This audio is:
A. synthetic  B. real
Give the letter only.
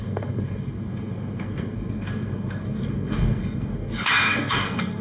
A